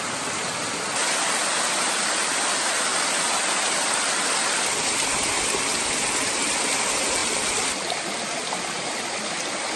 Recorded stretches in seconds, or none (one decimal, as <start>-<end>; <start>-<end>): 0.0-9.8